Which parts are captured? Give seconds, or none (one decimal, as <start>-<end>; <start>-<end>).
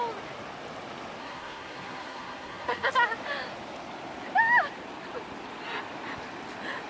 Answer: 0.0-1.2; 2.9-6.9